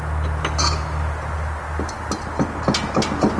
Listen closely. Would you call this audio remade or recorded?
recorded